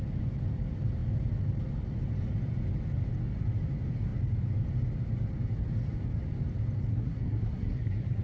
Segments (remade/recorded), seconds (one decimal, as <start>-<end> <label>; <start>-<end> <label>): 0.0-6.9 recorded; 6.9-8.2 remade